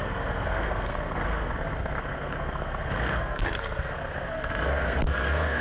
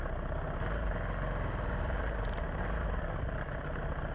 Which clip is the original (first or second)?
second